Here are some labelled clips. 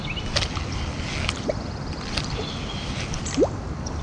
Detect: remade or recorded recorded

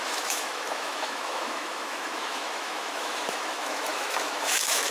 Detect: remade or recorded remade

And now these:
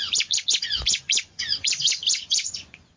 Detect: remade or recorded remade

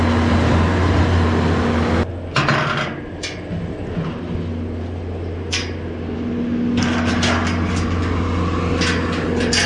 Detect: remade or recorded recorded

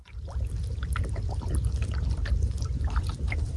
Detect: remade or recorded remade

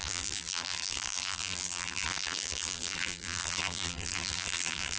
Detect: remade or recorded remade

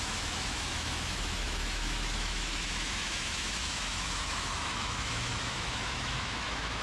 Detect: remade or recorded remade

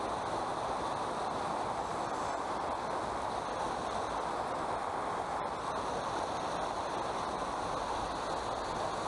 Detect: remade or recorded recorded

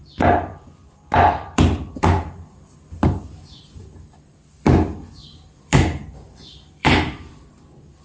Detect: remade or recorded remade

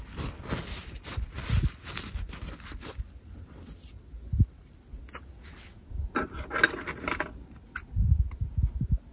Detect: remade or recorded recorded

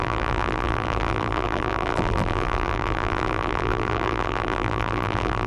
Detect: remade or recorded remade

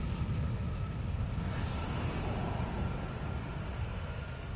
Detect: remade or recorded recorded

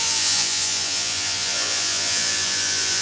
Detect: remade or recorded remade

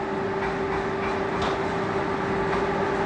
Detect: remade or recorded recorded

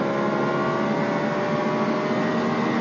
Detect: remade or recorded recorded